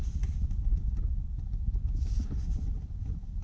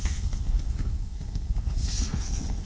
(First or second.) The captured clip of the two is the first